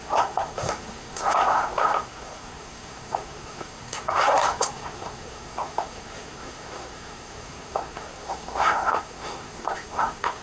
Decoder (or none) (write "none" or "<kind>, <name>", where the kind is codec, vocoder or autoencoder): codec, SNAC